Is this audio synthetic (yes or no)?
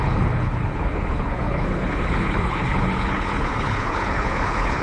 yes